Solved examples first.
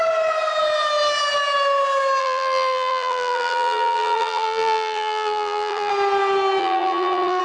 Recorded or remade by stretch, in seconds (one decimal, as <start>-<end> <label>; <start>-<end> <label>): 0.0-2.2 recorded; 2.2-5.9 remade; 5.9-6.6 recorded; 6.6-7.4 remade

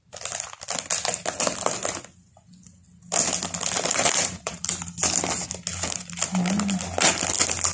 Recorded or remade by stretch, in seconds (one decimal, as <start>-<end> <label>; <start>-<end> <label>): 0.0-3.9 recorded; 3.9-4.7 remade; 4.7-7.7 recorded

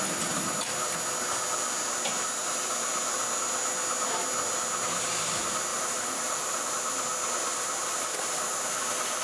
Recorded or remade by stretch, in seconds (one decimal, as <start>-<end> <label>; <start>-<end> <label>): 0.0-5.7 recorded; 5.7-6.7 remade; 6.7-9.2 recorded